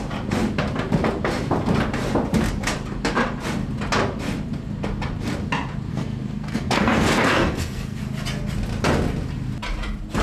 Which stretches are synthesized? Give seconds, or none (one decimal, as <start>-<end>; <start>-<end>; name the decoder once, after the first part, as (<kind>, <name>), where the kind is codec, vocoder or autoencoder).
5.9-8.0 (codec, SNAC)